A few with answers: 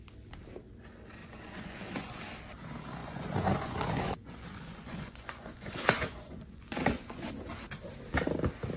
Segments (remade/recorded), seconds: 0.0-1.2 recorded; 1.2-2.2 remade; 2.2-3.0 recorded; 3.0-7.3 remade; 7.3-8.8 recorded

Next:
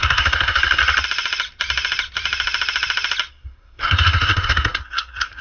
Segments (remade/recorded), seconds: 0.0-0.8 remade; 0.8-3.3 recorded; 3.3-5.4 remade

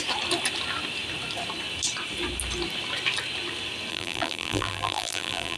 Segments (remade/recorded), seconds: 0.0-3.9 recorded; 3.9-5.6 remade

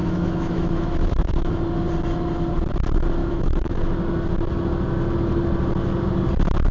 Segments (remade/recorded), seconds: 0.0-1.5 remade; 1.5-3.2 recorded; 3.2-3.8 remade; 3.8-6.7 recorded

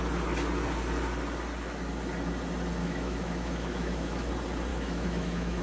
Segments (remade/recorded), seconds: 0.0-2.8 recorded; 2.8-4.3 remade; 4.3-4.7 recorded; 4.7-5.6 remade

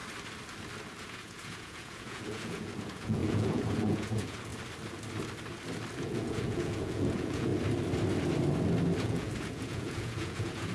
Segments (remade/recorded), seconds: 0.0-1.0 recorded; 1.0-4.5 remade; 4.5-6.0 recorded; 6.0-7.5 remade; 7.5-9.0 recorded; 9.0-10.7 remade